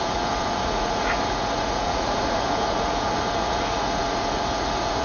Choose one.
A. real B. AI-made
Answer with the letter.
B